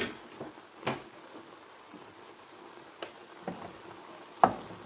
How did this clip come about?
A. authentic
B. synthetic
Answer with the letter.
A